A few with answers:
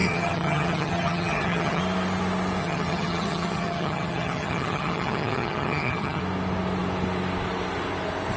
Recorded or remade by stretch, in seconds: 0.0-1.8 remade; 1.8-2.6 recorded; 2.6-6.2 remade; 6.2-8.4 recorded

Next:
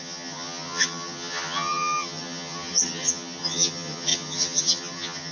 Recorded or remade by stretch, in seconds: 0.0-5.3 remade